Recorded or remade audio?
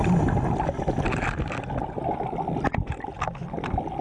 recorded